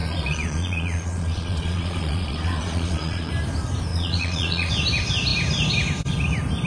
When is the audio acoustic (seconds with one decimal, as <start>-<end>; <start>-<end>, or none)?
3.3-3.9; 4.7-6.7